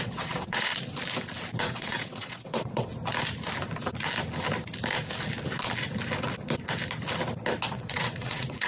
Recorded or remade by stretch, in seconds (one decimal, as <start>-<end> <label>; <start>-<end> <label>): 0.0-0.7 remade; 0.7-1.6 recorded; 1.6-2.9 remade; 2.9-7.7 recorded; 7.7-8.7 remade